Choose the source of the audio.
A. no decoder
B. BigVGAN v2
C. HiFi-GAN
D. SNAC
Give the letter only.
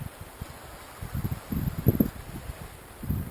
A